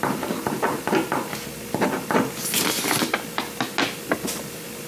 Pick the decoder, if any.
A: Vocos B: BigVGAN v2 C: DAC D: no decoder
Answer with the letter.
D